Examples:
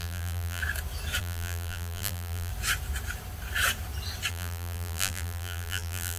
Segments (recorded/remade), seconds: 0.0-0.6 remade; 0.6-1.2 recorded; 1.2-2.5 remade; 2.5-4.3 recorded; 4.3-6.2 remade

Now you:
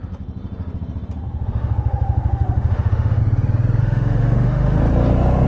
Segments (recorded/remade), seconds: 0.0-1.6 recorded; 1.6-3.2 remade; 3.2-3.8 recorded; 3.8-4.8 remade; 4.8-5.5 recorded

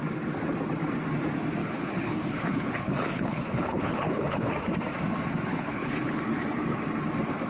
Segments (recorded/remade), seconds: 0.0-1.6 recorded; 1.6-4.5 remade; 4.5-5.5 recorded; 5.5-6.2 remade; 6.2-7.5 recorded

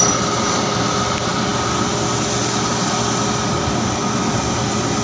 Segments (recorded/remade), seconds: 0.0-5.0 recorded

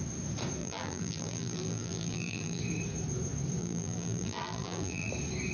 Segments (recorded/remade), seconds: 0.0-0.6 recorded; 0.6-2.6 remade; 2.6-3.6 recorded; 3.6-5.1 remade; 5.1-5.5 recorded

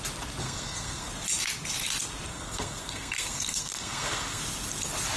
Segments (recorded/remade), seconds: 0.0-0.4 recorded; 0.4-1.1 remade; 1.1-2.3 recorded; 2.3-4.4 remade; 4.4-5.2 recorded